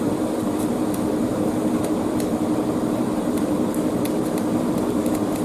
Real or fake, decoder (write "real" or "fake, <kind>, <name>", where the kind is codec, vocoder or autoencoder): fake, vocoder, BigVGAN v2